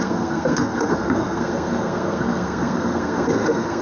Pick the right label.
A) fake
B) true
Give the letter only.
A